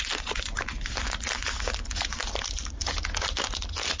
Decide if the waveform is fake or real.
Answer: real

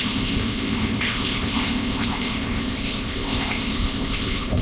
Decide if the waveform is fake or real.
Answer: fake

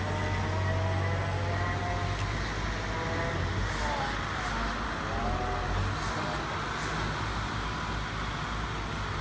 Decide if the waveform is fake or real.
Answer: real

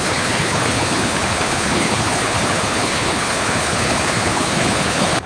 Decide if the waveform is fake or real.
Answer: fake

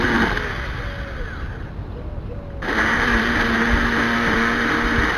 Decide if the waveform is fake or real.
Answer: real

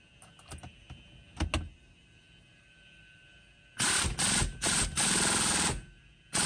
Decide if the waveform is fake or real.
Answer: real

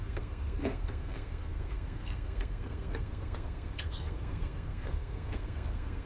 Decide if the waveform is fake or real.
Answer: fake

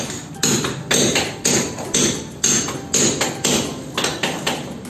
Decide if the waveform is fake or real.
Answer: real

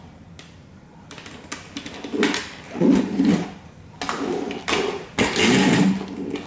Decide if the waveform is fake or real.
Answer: real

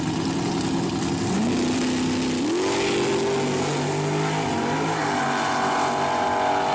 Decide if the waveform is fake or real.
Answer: real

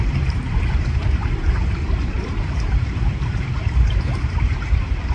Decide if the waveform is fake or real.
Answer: fake